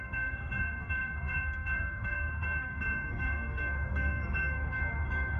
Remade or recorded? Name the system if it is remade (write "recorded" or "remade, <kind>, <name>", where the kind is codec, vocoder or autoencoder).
remade, codec, SNAC